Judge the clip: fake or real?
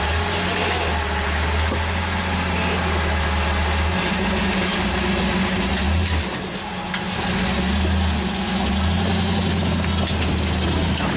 real